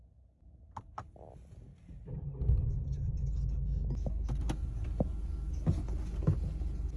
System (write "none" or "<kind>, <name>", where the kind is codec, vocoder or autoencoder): none